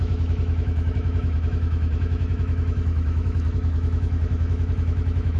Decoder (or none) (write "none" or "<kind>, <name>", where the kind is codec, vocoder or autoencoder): autoencoder, DAC-VAE